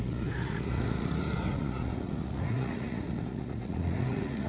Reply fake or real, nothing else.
fake